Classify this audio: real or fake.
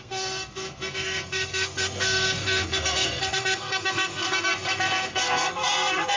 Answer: fake